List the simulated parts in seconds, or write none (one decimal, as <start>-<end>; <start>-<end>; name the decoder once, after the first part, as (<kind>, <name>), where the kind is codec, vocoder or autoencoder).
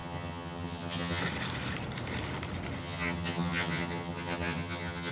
0.0-1.2 (vocoder, HiFi-GAN); 2.8-5.1